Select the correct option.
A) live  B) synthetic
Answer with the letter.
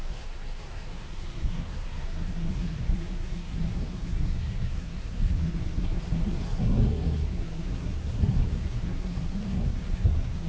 B